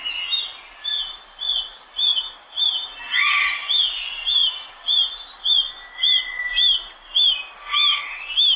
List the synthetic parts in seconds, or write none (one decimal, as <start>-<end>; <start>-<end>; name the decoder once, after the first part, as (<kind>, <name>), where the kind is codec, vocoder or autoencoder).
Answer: none

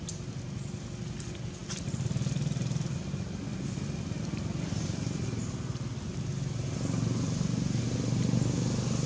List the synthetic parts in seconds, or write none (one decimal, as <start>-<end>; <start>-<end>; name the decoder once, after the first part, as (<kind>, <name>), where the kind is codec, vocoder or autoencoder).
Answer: none